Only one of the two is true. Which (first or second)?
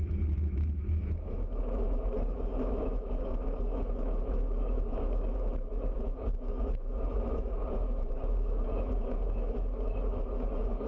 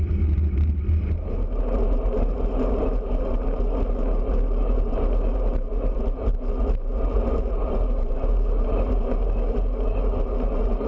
second